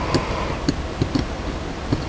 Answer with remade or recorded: recorded